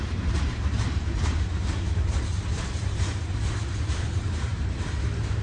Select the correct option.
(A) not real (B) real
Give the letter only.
A